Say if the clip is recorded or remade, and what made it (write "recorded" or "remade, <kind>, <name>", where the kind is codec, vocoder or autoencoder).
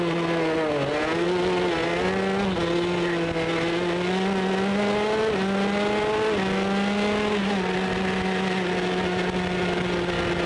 recorded